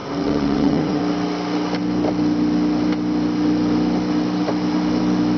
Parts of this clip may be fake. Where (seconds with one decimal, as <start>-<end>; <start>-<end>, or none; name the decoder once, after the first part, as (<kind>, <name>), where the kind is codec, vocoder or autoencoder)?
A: 0.0-1.0 (vocoder, WaveNeXt)

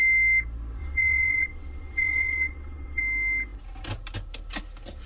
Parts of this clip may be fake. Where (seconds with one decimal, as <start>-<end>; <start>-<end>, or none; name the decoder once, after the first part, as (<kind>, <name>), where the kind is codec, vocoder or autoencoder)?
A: 0.8-3.0 (vocoder, WaveNeXt)

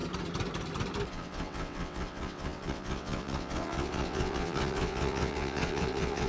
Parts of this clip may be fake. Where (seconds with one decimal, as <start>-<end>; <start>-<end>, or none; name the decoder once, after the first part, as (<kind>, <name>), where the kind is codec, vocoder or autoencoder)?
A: 1.1-6.3 (vocoder, WaveNeXt)

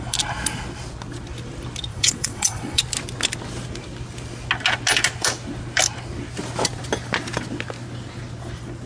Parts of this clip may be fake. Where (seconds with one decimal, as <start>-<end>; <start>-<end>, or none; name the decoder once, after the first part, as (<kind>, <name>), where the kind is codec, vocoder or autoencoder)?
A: 1.9-2.8 (vocoder, WaveNeXt)

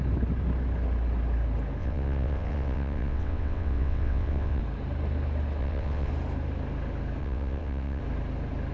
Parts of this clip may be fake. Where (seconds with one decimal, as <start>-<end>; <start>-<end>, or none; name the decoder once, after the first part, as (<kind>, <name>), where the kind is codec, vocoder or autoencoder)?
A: 1.8-4.6 (vocoder, WaveNeXt); 5.6-6.1; 7.2-8.0